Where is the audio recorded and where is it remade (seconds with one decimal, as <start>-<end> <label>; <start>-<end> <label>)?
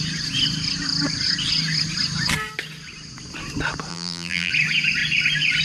0.0-3.9 recorded; 3.9-4.5 remade; 4.5-5.6 recorded